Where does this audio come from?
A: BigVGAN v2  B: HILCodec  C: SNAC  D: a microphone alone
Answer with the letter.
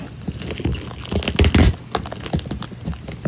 D